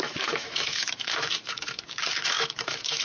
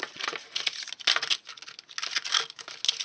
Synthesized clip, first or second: first